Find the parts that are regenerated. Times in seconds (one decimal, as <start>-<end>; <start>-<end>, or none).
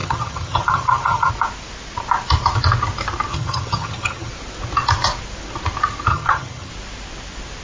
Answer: 0.0-1.3; 3.3-4.3; 6.1-6.7